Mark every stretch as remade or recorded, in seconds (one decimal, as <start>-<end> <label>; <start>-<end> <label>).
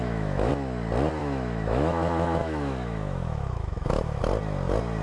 0.0-0.5 remade; 0.5-1.2 recorded; 1.2-4.2 remade; 4.2-5.0 recorded